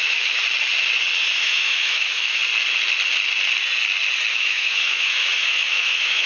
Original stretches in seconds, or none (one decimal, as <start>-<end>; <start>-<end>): 0.4-1.3; 2.4-4.3